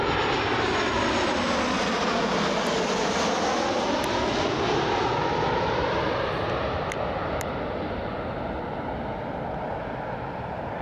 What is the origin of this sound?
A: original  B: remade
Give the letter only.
A